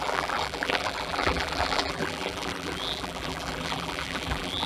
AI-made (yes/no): yes